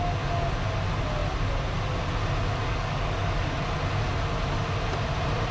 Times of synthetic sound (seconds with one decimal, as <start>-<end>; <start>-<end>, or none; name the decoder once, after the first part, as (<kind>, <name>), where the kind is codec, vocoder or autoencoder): 2.6-3.5 (codec, DAC)